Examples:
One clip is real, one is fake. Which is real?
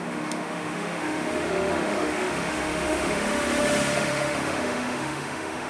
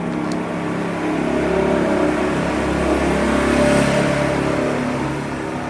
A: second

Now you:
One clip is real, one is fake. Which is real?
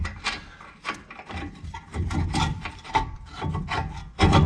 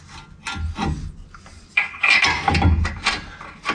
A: second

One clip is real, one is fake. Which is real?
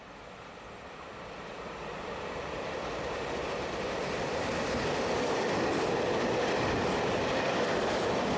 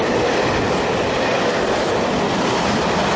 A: second